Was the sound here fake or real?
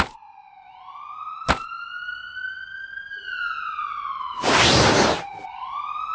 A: real